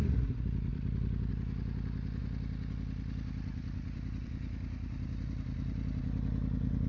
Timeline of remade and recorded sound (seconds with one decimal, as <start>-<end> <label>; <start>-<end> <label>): 0.0-0.7 recorded; 0.7-1.3 remade; 1.3-2.2 recorded; 2.2-6.0 remade; 6.0-6.9 recorded

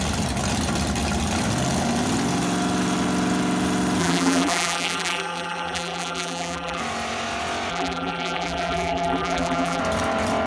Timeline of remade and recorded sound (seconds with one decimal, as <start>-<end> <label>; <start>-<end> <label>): 0.0-4.0 recorded; 4.0-6.8 remade; 6.8-7.7 recorded; 7.7-9.8 remade; 9.8-10.5 recorded

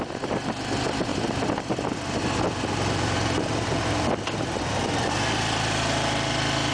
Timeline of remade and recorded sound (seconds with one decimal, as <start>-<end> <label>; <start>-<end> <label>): 0.0-6.7 recorded